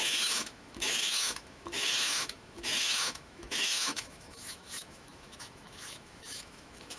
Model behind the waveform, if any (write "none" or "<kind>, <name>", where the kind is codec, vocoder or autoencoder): autoencoder, DAC-VAE